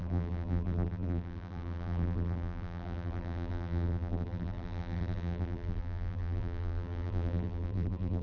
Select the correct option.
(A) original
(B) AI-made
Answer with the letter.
B